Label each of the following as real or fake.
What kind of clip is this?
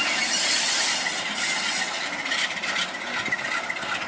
real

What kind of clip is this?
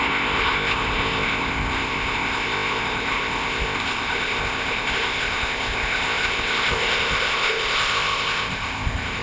fake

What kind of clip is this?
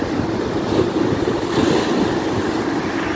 real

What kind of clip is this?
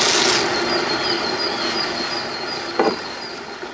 real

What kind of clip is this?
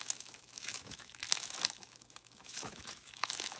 fake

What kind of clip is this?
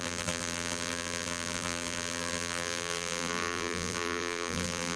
fake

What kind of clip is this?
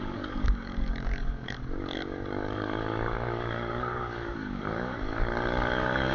fake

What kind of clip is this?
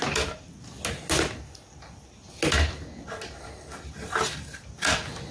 real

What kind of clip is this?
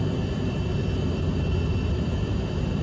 real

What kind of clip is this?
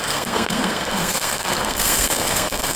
fake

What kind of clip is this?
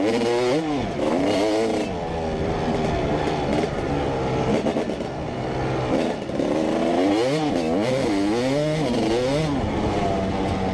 real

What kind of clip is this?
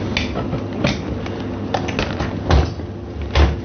real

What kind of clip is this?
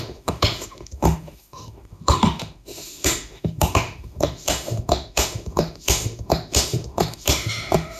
fake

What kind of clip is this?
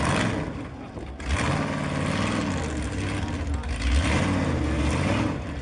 real